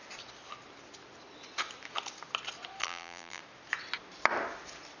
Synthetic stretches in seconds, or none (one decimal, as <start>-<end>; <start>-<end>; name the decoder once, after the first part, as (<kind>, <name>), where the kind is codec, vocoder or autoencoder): 2.8-3.4 (vocoder, BigVGAN v2)